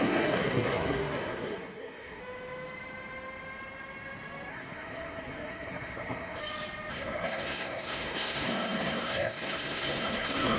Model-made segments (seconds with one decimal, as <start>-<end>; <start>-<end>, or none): 0.0-2.2; 4.5-6.4; 6.9-10.6

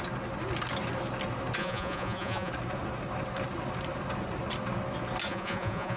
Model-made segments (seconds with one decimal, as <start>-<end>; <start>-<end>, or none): 1.6-2.5; 5.3-6.0

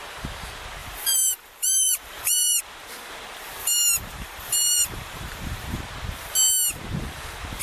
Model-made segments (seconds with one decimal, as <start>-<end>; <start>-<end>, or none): 0.8-2.6; 3.6-5.8

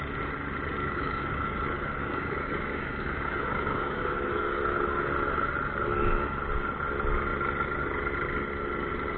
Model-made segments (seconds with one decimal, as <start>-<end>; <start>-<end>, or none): 0.8-1.6; 2.0-4.6

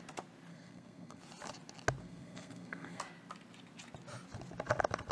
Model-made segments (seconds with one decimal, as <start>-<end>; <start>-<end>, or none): 0.5-1.2; 2.0-3.0

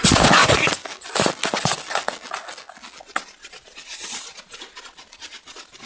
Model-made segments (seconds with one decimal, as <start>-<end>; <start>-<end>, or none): 0.0-0.4; 3.0-5.9